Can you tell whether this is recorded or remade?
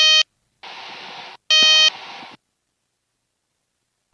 recorded